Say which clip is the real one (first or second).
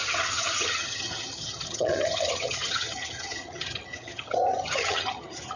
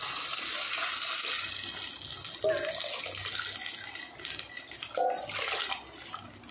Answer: second